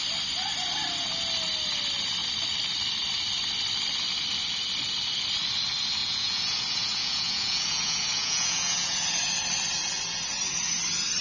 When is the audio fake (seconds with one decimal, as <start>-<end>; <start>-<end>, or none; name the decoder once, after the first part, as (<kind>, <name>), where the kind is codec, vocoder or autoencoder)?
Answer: 6.0-9.3 (vocoder, Vocos)